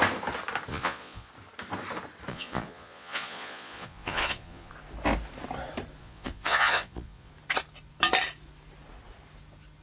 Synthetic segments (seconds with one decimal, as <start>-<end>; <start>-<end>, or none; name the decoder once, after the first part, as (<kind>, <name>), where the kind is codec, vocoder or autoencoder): 0.7-1.3 (vocoder, Vocos); 2.3-4.7; 6.0-7.3